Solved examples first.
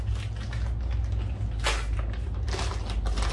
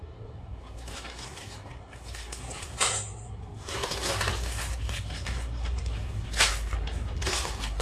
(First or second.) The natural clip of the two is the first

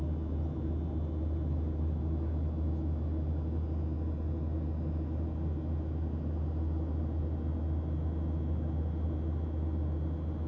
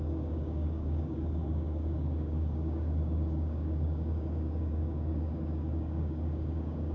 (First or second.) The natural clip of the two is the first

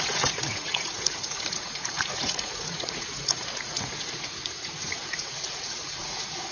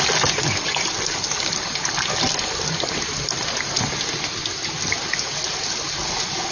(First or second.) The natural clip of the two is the second